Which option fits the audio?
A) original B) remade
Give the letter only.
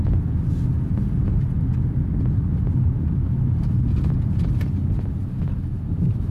A